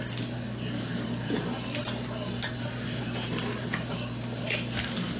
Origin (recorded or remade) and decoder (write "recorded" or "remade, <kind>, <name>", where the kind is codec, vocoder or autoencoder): recorded